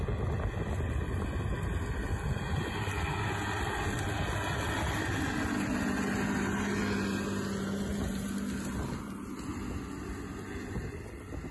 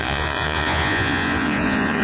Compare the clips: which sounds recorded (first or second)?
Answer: first